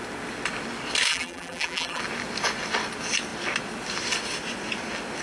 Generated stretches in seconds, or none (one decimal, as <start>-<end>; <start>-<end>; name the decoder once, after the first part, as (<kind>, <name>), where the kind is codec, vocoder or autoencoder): 1.1-2.0 (vocoder, BigVGAN v2)